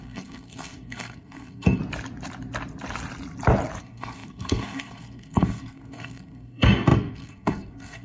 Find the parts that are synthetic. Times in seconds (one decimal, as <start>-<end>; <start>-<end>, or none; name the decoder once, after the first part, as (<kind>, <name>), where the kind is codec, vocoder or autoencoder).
0.0-1.8 (codec, SNAC); 3.8-8.0